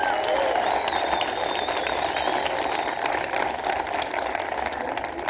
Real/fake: fake